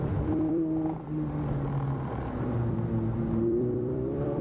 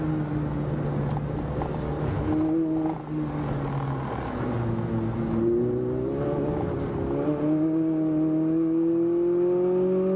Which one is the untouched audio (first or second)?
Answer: second